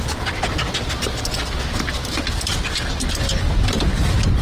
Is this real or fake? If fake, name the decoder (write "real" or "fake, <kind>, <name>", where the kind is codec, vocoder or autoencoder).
real